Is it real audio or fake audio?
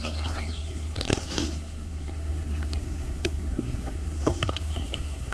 fake